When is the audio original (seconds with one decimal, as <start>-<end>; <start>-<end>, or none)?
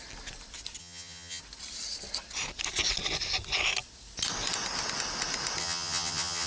0.0-0.8; 1.4-5.6